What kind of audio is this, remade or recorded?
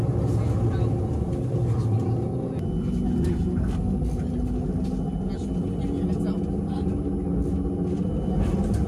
recorded